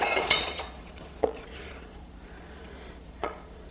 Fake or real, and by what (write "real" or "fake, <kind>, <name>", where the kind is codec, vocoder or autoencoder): fake, vocoder, Vocos